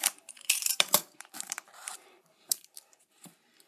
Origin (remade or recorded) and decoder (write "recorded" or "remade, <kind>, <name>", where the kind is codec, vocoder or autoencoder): remade, vocoder, BigVGAN v2